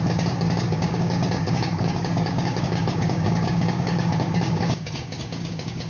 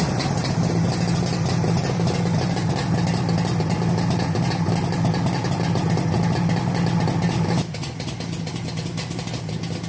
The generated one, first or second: first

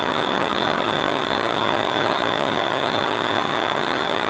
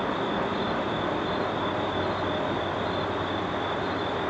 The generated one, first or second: first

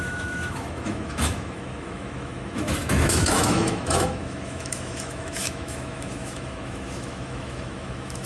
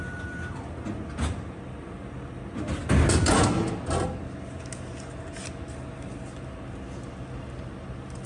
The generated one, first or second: first